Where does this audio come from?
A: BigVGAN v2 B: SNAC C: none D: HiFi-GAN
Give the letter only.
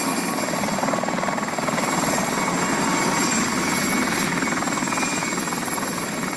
C